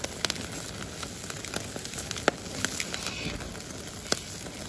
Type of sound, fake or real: real